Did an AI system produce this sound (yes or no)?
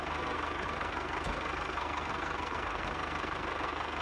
yes